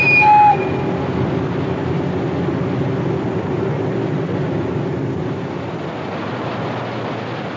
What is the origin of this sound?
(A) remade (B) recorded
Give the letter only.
B